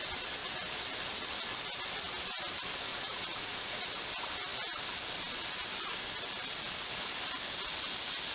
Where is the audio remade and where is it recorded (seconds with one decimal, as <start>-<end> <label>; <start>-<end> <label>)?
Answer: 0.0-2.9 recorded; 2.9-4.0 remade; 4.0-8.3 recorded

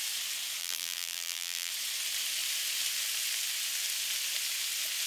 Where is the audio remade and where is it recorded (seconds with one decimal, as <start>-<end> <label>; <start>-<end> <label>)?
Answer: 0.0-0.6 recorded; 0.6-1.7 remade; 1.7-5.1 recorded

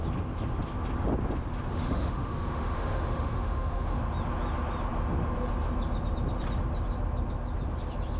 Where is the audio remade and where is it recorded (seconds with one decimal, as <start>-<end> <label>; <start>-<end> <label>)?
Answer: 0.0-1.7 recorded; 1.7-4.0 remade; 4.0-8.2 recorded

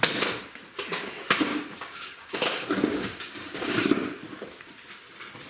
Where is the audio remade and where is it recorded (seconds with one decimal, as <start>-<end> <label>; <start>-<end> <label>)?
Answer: 0.0-1.5 recorded; 1.5-3.8 remade; 3.8-5.5 recorded